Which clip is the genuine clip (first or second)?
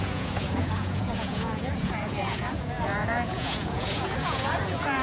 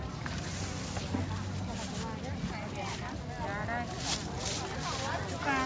second